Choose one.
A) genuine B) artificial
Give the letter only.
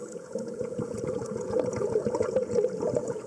B